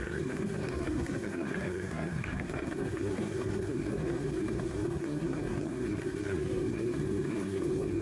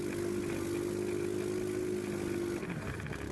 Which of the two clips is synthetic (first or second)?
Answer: first